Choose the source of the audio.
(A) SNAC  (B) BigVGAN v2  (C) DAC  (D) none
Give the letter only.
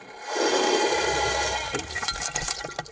D